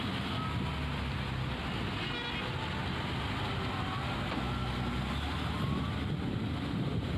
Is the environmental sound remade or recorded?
recorded